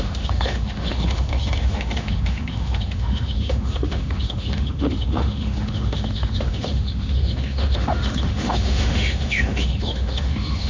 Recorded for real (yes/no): no